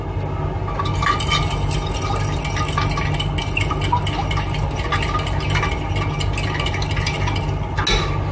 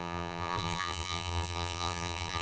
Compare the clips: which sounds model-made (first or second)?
second